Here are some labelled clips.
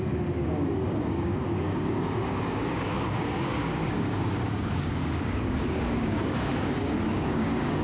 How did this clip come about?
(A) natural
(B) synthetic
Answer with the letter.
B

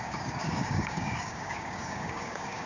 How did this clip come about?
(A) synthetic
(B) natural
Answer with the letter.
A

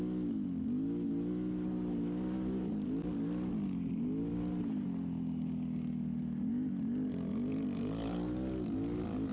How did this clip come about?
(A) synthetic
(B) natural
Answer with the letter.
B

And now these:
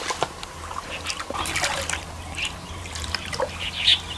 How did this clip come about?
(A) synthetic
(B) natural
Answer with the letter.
B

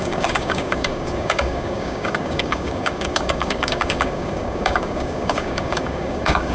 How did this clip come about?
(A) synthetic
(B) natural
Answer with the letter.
A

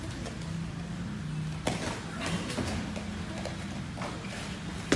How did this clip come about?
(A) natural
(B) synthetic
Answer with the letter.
A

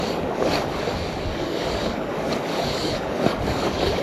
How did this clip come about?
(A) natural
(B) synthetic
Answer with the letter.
B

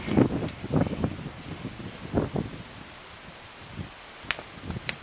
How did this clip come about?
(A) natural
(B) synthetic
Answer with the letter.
A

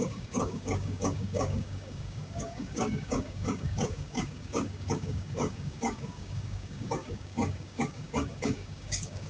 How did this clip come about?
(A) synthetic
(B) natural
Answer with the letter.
A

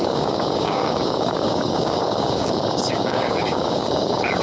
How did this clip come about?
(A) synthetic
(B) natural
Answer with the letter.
A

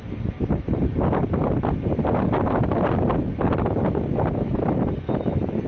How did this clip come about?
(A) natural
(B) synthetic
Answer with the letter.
A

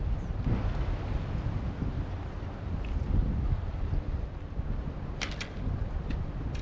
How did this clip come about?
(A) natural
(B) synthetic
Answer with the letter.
A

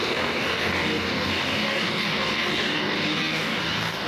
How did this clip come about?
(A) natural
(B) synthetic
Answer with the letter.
B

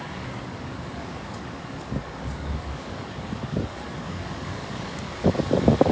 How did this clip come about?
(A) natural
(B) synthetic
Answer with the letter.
B